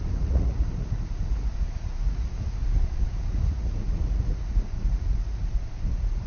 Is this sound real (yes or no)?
no